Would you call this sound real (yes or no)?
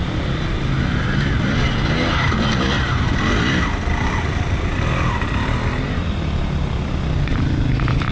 yes